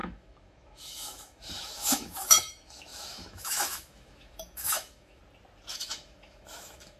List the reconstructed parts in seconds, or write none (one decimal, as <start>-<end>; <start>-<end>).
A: 0.0-5.2; 5.7-7.0